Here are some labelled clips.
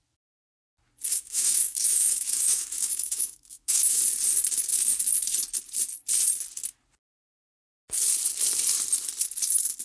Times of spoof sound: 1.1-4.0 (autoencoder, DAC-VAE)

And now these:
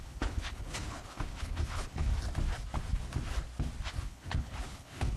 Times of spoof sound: 0.0-2.1 (codec, HILCodec); 3.9-5.2

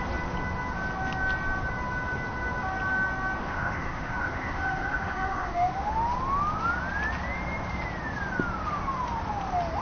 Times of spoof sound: 3.4-5.9 (autoencoder, DAC-VAE)

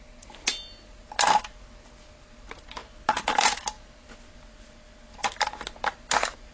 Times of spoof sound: none